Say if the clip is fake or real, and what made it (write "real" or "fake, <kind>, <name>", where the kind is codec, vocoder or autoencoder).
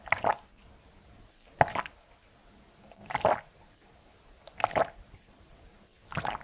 real